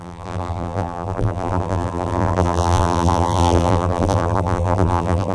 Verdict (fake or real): fake